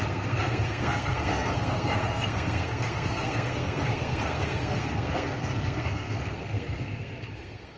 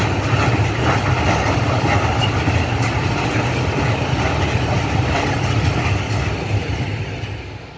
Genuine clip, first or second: second